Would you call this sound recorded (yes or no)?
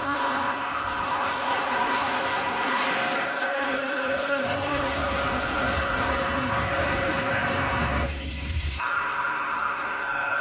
no